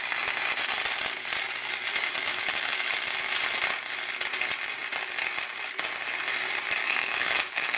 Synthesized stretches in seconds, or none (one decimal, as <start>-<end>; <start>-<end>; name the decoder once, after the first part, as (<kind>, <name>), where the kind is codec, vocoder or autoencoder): 2.2-2.9 (autoencoder, DAC-VAE); 6.8-7.8